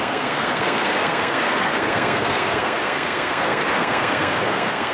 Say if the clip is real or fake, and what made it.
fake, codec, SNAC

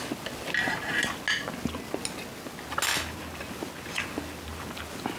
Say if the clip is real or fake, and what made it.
real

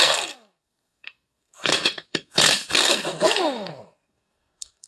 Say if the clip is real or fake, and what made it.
fake, codec, SNAC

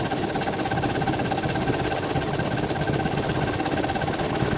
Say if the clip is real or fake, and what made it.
real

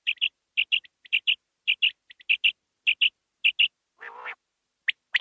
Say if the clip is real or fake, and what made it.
real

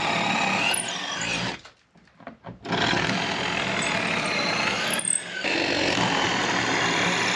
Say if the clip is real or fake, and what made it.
real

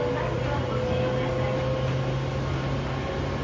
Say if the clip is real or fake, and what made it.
real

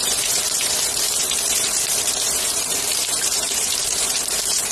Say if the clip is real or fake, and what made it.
fake, vocoder, BigVGAN v2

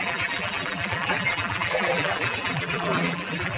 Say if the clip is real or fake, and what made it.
fake, vocoder, BigVGAN v2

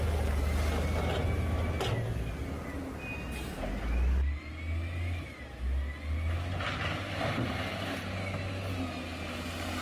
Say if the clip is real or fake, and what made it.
real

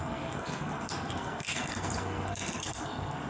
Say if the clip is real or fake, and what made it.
fake, codec, SNAC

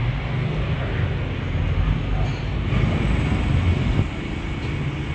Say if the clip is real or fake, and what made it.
real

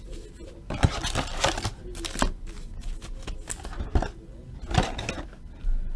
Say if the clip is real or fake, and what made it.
real